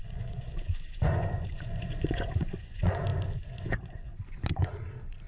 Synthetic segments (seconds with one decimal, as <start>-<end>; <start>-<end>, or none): 0.0-3.1; 3.6-4.7